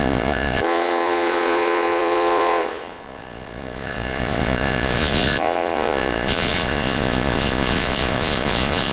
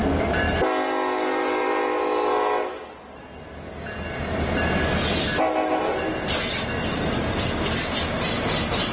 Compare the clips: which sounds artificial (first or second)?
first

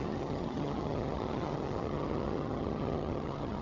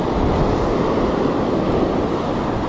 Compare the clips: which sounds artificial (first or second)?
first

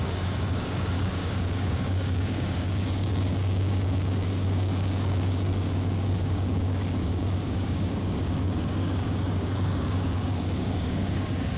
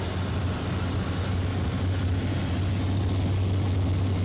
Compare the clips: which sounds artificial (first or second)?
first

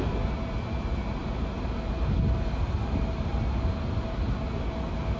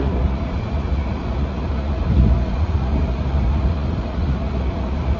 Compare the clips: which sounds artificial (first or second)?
second